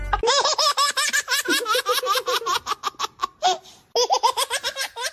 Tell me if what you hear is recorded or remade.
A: recorded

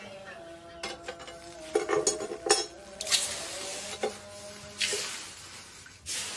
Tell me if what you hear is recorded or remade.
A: recorded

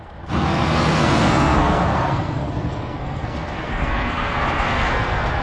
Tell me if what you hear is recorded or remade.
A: remade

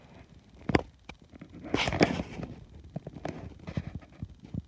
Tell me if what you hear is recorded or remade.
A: recorded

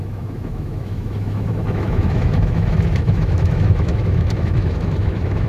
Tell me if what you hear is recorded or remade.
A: remade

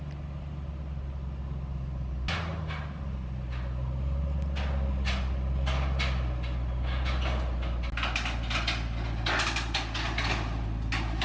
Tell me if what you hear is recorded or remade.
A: recorded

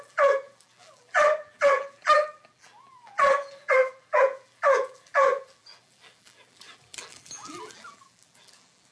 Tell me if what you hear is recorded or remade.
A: remade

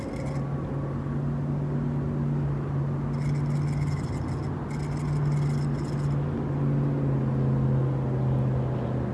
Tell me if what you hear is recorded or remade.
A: recorded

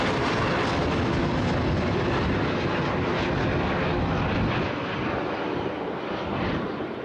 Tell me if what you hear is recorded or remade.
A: recorded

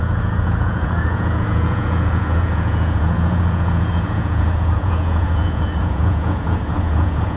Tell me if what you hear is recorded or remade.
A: remade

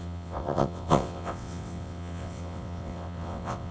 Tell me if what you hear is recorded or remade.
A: remade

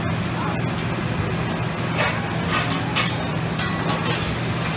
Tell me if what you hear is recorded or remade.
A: recorded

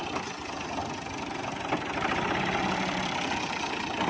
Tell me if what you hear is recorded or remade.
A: recorded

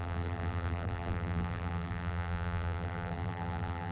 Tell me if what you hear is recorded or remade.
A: remade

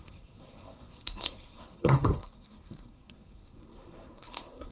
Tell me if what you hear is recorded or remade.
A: remade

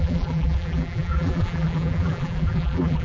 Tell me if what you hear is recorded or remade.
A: remade